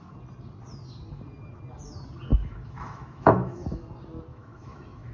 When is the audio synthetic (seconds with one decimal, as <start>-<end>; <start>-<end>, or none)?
2.3-3.8; 4.3-5.1